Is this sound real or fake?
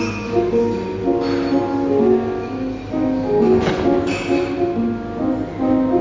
real